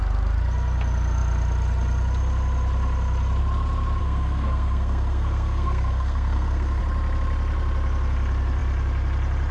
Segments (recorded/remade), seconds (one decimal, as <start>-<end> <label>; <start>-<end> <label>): 0.0-4.0 recorded; 4.0-6.8 remade; 6.8-9.5 recorded